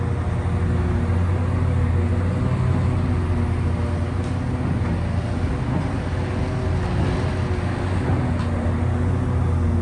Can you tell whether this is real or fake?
real